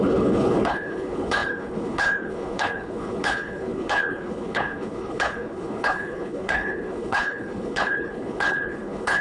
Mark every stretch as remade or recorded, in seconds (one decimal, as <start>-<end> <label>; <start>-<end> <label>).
0.0-9.2 remade